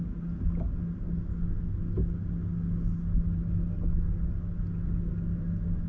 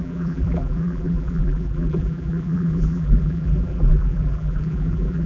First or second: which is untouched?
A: first